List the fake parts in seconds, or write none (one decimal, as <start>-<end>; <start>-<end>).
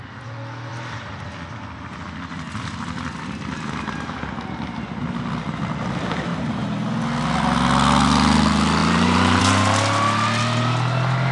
8.8-9.4